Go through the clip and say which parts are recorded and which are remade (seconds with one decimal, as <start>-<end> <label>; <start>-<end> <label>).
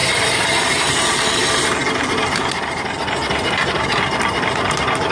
0.0-5.1 recorded